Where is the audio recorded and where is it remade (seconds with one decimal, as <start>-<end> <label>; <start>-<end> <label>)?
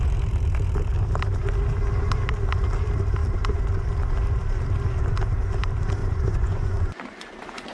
0.0-6.0 recorded; 6.0-7.7 remade